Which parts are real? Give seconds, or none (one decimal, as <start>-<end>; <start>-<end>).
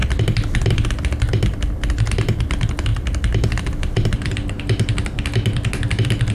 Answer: 0.0-6.3